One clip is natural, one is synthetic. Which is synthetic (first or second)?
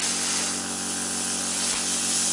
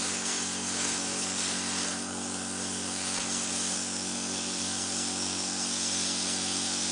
second